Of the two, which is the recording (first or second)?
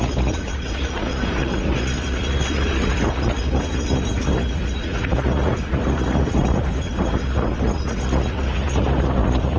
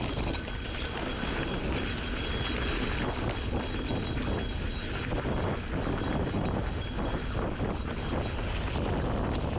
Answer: second